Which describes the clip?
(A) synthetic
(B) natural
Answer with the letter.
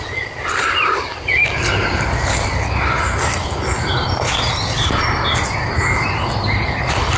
B